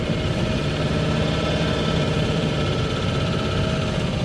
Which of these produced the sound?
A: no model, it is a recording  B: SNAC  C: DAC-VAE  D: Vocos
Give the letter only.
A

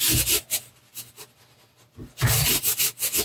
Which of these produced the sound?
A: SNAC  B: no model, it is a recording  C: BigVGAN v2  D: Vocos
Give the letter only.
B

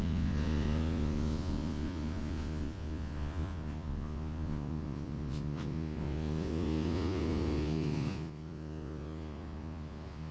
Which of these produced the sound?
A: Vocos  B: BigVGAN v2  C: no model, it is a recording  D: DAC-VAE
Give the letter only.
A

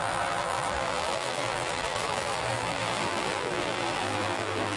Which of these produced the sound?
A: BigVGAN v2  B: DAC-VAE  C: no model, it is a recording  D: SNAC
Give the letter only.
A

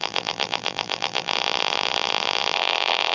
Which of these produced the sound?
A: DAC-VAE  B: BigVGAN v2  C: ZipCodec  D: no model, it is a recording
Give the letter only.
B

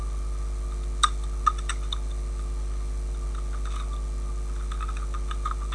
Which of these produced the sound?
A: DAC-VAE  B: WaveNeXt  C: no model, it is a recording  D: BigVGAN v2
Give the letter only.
C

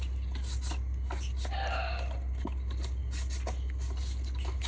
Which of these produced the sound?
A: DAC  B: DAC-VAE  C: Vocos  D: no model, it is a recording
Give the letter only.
D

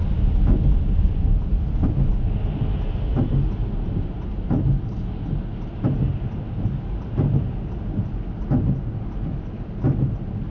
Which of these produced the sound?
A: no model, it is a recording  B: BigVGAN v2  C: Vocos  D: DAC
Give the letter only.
A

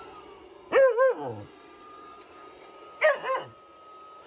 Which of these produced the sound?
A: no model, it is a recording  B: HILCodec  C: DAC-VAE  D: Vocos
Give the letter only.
A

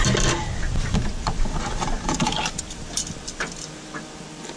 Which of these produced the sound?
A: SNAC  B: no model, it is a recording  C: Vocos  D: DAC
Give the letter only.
B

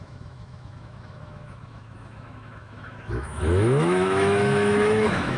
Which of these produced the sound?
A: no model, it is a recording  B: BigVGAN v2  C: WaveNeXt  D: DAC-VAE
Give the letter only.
D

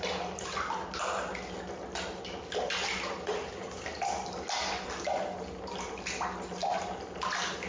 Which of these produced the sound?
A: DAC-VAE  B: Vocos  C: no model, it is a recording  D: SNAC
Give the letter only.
C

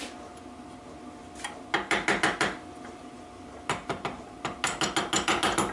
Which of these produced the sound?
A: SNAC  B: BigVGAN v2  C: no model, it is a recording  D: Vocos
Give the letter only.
C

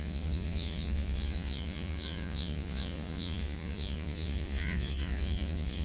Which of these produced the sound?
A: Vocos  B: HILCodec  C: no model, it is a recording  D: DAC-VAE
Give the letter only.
A